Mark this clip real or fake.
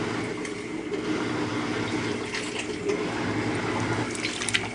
real